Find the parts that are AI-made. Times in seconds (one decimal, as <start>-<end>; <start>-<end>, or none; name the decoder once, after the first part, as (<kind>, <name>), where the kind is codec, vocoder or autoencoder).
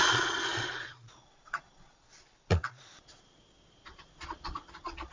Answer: 0.0-5.1 (vocoder, Vocos)